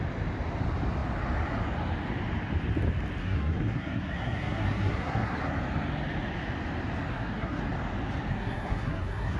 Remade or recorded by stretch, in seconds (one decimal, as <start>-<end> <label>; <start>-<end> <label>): 0.0-3.2 recorded; 3.2-5.4 remade; 5.4-7.1 recorded; 7.1-7.6 remade; 7.6-8.3 recorded; 8.3-9.4 remade